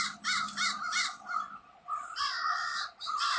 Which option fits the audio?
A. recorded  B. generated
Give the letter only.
A